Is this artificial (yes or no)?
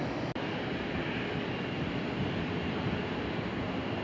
no